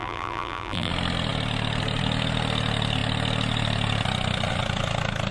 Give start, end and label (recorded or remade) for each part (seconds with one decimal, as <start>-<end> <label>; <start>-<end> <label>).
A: 0.0-0.9 remade; 0.9-5.3 recorded